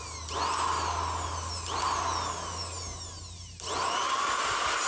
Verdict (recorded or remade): recorded